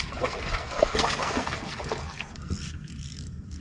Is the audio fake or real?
fake